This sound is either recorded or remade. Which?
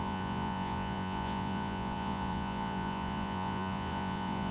remade